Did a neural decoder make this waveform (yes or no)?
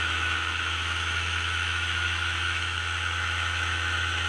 yes